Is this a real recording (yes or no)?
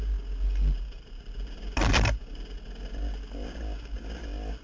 yes